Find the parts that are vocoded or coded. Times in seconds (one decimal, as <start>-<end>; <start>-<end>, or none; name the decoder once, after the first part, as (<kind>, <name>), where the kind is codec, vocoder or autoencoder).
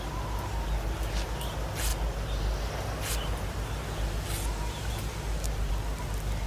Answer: none